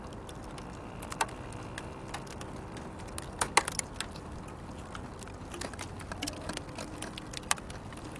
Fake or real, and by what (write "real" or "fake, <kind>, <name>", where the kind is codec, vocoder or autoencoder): real